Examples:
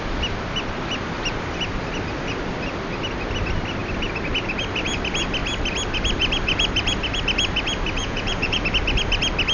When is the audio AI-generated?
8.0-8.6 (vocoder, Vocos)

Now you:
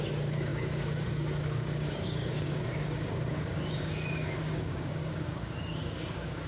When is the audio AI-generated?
0.0-6.5 (codec, DAC)

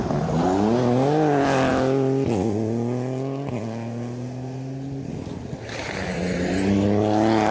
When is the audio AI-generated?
none

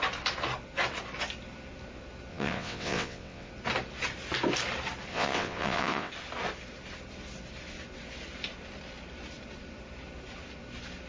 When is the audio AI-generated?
2.3-3.5 (vocoder, WaveNeXt); 5.1-6.1

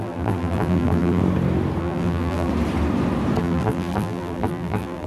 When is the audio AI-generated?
0.0-1.2 (vocoder, BigVGAN v2); 1.8-2.5; 3.4-5.1

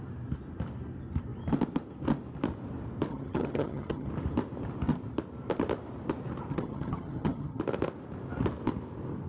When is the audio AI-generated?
3.1-4.1 (vocoder, HiFi-GAN); 6.5-7.6

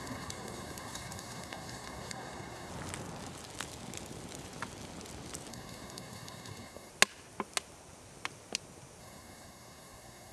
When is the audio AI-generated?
0.0-2.7 (codec, SNAC); 5.5-6.9; 9.0-10.3